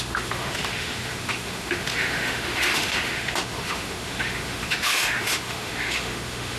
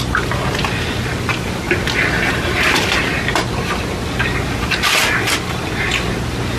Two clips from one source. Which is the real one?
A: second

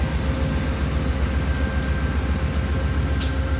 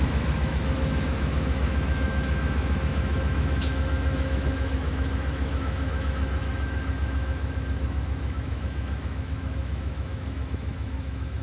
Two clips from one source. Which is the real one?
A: first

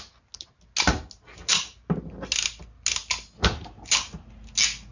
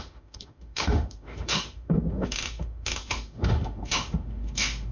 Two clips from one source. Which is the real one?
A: first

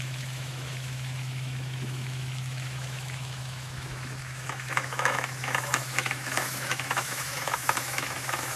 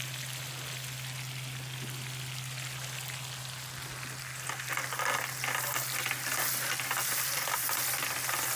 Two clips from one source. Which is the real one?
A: second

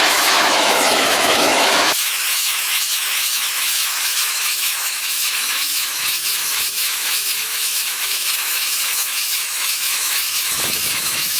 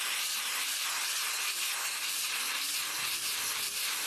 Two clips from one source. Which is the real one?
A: second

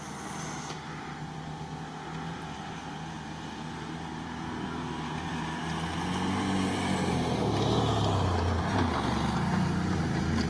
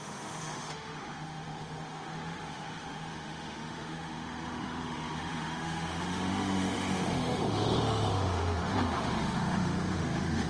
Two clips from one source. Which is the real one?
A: first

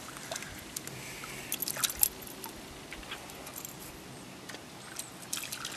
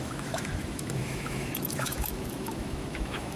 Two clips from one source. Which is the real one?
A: first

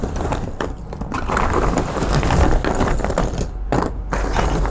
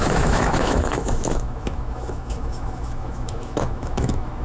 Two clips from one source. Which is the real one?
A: first